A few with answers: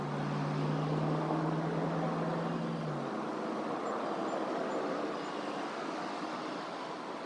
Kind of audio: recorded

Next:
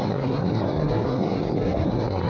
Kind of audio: remade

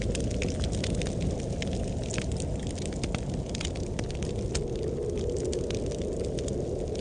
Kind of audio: recorded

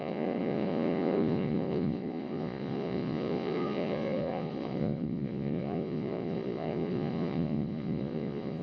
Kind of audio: remade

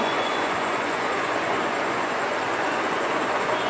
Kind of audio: remade